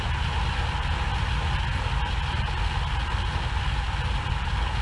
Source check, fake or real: real